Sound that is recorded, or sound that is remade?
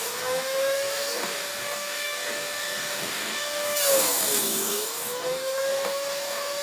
remade